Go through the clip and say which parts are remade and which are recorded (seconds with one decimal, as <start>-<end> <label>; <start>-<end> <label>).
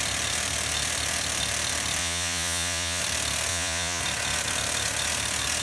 0.0-2.0 recorded; 2.0-3.0 remade; 3.0-3.5 recorded; 3.5-4.0 remade; 4.0-5.6 recorded